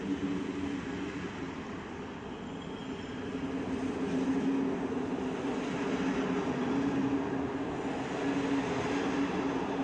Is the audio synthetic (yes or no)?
no